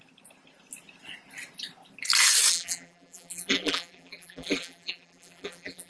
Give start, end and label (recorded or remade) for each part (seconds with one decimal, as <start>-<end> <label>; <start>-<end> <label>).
0.0-2.5 recorded; 2.5-5.9 remade